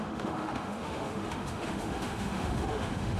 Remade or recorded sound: remade